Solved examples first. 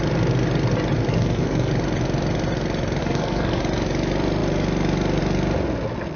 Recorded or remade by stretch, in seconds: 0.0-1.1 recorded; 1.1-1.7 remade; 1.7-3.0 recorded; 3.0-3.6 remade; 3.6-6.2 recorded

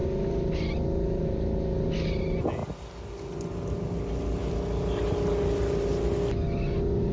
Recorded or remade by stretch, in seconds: 0.0-7.1 recorded

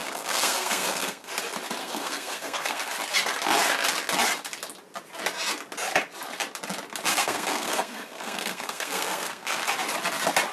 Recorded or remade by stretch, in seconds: 0.0-1.3 remade; 1.3-1.8 recorded; 1.8-2.9 remade; 2.9-7.1 recorded; 7.1-9.6 remade; 9.6-10.5 recorded

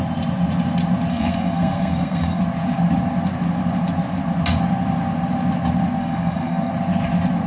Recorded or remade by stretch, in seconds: 0.0-1.1 recorded; 1.1-2.4 remade; 2.4-6.0 recorded; 6.0-6.7 remade; 6.7-7.5 recorded